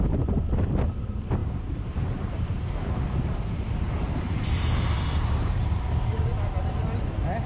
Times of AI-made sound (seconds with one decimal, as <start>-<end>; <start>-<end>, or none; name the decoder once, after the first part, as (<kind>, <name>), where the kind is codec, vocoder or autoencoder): 1.4-5.8 (vocoder, BigVGAN v2)